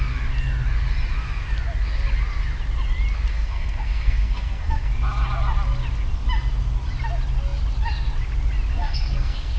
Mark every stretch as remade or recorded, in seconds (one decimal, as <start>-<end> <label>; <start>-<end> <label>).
0.0-3.3 recorded; 3.3-4.9 remade; 4.9-8.7 recorded; 8.7-9.6 remade